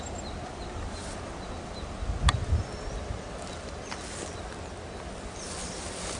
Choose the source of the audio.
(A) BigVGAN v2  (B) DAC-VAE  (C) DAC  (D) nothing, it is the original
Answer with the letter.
D